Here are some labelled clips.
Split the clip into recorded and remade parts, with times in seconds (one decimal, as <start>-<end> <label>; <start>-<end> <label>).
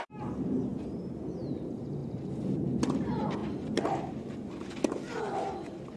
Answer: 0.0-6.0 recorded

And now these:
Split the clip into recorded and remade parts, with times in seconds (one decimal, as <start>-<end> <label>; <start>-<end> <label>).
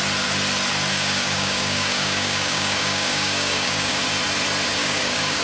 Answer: 0.0-0.9 recorded; 0.9-4.0 remade; 4.0-4.8 recorded; 4.8-5.4 remade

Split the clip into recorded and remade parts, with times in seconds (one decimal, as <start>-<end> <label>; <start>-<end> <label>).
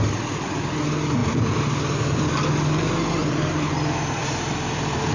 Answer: 0.0-3.2 recorded; 3.2-3.7 remade; 3.7-4.2 recorded; 4.2-5.1 remade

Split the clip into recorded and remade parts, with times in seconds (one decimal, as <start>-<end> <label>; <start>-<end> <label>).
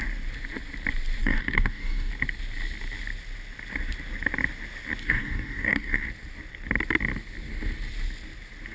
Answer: 0.0-1.2 recorded; 1.2-2.1 remade; 2.1-5.0 recorded; 5.0-6.1 remade; 6.1-8.7 recorded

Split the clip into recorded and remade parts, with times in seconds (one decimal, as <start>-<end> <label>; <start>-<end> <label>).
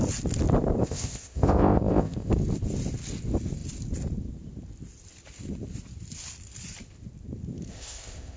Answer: 0.0-0.8 recorded; 0.8-2.3 remade; 2.3-7.7 recorded; 7.7-8.4 remade